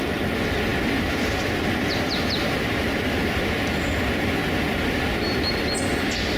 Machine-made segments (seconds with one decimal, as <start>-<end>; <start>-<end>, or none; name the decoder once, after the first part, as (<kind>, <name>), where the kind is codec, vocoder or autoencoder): none